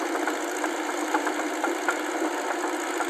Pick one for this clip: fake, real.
real